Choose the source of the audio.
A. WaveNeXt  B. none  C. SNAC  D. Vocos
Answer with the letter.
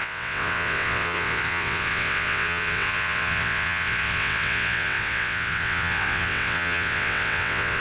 A